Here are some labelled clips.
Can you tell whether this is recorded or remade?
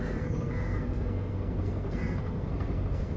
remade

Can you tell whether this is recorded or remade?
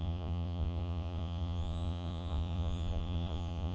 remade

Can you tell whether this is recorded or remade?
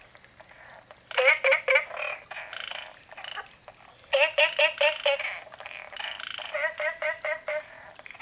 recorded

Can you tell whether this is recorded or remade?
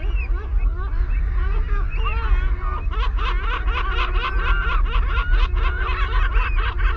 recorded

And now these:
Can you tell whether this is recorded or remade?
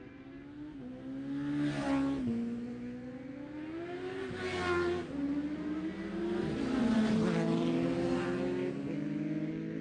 recorded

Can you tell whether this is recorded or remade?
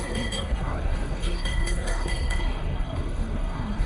remade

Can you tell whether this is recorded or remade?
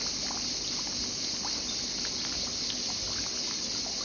recorded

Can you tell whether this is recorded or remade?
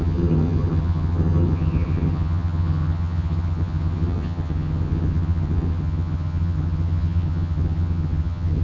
remade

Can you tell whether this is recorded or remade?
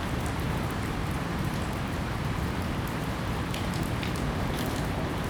remade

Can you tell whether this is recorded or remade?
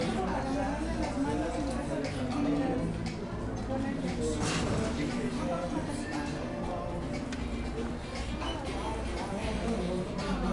recorded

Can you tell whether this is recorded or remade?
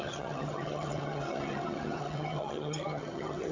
remade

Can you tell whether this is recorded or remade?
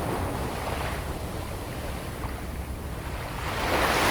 recorded